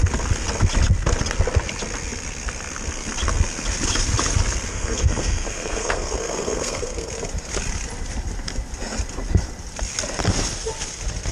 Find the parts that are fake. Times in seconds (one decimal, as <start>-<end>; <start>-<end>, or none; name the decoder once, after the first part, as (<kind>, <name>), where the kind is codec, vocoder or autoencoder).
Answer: 4.7-7.1 (codec, SNAC)